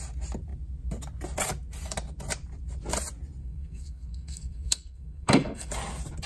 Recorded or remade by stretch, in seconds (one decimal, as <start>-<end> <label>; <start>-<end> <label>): 0.0-3.4 recorded; 3.4-5.7 remade; 5.7-6.3 recorded

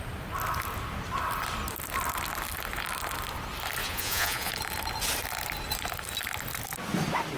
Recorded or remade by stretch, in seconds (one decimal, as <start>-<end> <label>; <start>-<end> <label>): 0.0-3.8 recorded; 3.8-4.5 remade; 4.5-7.4 recorded

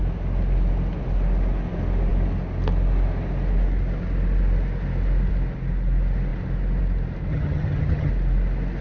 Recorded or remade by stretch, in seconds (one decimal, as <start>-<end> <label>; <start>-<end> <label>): 0.0-7.3 recorded; 7.3-8.1 remade; 8.1-8.8 recorded

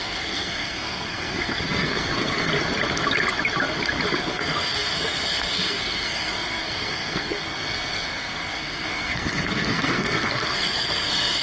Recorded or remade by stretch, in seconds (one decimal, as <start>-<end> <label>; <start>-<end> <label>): 0.0-2.5 remade; 2.5-4.2 recorded; 4.2-11.4 remade

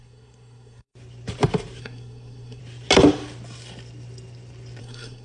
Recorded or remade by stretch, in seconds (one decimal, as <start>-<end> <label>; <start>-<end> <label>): 0.0-0.9 remade; 0.9-1.8 recorded; 1.8-2.6 remade; 2.6-4.8 recorded; 4.8-5.2 remade

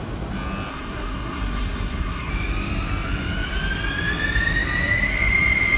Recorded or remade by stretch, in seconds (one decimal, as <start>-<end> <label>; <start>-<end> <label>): 0.0-0.7 recorded; 0.7-2.3 remade; 2.3-5.8 recorded

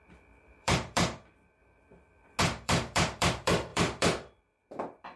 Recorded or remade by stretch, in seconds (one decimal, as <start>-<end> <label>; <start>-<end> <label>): 0.0-1.6 remade; 1.6-2.4 recorded; 2.4-5.2 remade

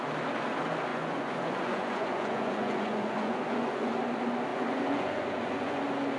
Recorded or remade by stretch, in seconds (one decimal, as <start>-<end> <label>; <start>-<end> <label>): 0.0-0.9 recorded; 0.9-3.9 remade; 3.9-4.5 recorded; 4.5-5.8 remade; 5.8-6.2 recorded